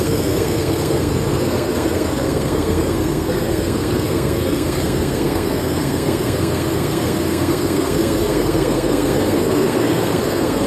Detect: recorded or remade remade